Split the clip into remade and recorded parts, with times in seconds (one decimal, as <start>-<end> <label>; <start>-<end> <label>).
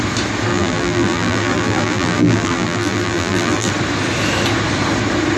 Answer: 0.0-0.5 recorded; 0.5-3.7 remade; 3.7-5.4 recorded